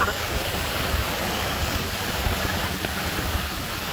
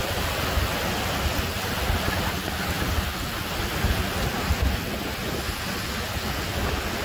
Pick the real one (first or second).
second